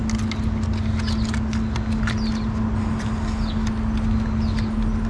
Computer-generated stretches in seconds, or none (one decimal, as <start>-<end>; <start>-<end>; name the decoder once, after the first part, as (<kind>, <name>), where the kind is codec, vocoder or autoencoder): none